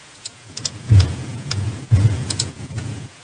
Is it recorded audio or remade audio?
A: remade